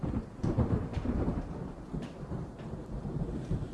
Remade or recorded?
remade